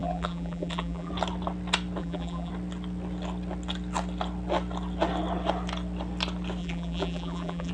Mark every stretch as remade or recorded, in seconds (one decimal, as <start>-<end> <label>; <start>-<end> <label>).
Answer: 0.0-1.1 remade; 1.1-2.0 recorded; 2.0-2.5 remade; 2.5-6.6 recorded; 6.6-7.7 remade